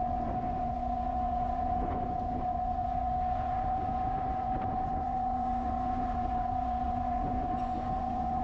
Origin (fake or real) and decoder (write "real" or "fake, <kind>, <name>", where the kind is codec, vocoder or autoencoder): fake, vocoder, Vocos